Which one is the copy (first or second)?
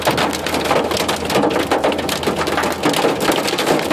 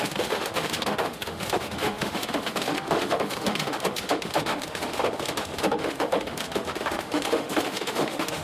second